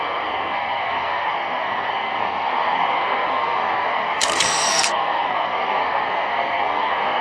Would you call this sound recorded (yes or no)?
no